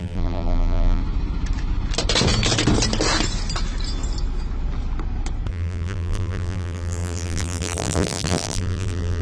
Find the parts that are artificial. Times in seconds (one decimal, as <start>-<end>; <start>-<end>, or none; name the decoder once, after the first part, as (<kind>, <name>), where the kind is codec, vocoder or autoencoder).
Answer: 0.0-1.0 (vocoder, BigVGAN v2); 5.5-9.2